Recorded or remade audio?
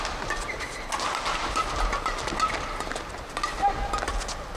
recorded